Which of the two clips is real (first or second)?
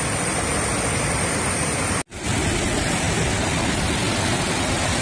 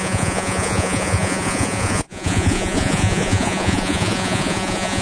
first